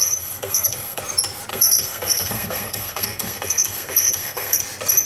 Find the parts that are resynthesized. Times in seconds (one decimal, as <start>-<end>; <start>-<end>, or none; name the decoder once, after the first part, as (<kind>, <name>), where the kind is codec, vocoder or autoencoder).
0.0-1.0 (codec, SNAC); 1.5-4.6

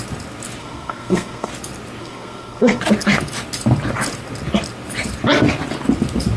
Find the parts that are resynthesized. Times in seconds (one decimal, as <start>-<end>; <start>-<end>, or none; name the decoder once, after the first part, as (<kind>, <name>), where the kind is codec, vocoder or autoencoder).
0.6-1.5 (codec, SNAC); 2.0-2.8

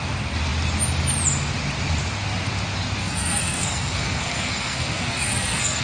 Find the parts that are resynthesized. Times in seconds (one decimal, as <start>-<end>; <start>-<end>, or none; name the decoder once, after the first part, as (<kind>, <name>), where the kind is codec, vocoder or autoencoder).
3.0-5.8 (codec, SNAC)

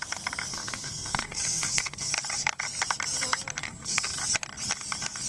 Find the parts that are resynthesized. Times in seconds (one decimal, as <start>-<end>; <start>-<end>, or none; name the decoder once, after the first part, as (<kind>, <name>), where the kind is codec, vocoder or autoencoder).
0.5-2.1 (codec, SNAC); 3.6-4.2

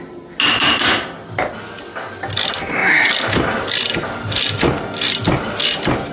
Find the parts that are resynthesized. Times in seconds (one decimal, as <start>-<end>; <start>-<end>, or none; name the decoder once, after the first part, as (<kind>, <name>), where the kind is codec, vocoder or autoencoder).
none

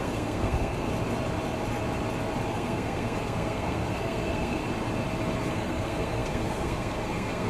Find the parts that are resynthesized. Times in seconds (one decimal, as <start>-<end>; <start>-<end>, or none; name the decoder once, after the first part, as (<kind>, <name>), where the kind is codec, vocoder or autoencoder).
0.0-0.9 (codec, SNAC); 2.5-4.6; 5.5-7.5